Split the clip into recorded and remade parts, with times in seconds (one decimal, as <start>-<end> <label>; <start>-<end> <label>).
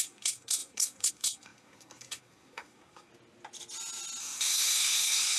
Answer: 0.0-3.1 remade; 3.1-4.2 recorded; 4.2-5.4 remade